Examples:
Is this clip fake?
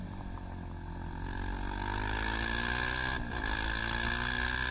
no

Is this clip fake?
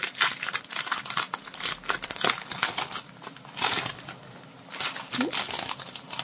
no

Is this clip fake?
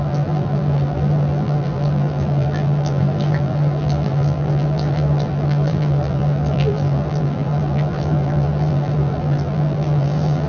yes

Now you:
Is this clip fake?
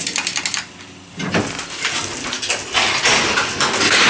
no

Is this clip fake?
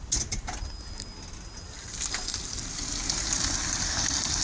no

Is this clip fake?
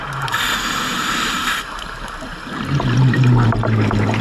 no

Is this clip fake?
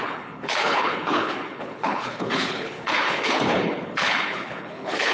yes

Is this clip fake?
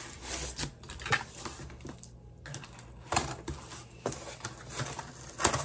no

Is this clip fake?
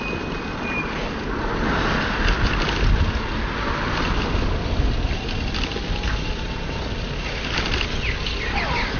no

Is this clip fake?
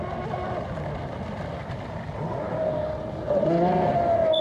no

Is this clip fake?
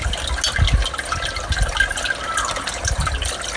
no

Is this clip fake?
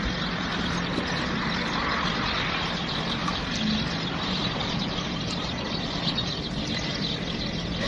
no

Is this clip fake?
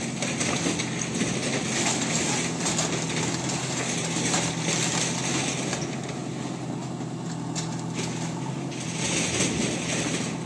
no